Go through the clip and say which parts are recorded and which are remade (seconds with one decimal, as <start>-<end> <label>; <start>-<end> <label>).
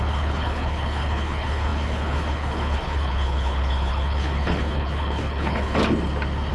0.0-5.8 remade; 5.8-6.5 recorded